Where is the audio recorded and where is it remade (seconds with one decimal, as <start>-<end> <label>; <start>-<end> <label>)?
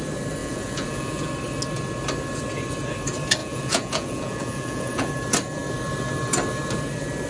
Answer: 0.0-0.4 recorded; 0.4-1.3 remade; 1.3-3.4 recorded; 3.4-5.1 remade; 5.1-7.3 recorded